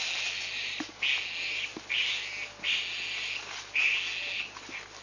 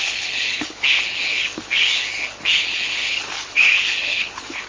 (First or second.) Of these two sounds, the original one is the first